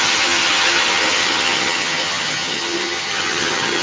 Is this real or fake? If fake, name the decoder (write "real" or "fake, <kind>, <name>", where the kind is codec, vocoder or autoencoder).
fake, vocoder, HiFi-GAN